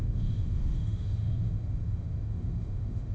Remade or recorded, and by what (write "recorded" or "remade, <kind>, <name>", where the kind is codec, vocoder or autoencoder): remade, autoencoder, DAC-VAE